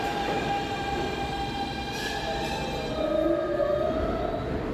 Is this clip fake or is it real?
real